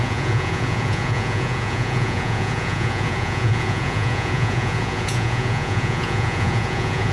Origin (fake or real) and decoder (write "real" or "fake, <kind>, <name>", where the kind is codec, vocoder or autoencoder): fake, vocoder, Vocos